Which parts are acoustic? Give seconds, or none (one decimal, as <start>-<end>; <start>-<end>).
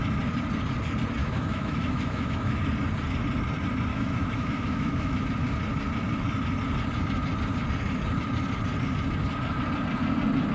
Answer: 0.0-1.2; 2.6-3.9; 5.2-10.5